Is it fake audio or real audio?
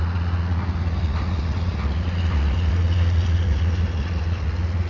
fake